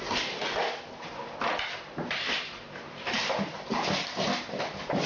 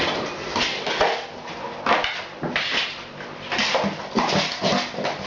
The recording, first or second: second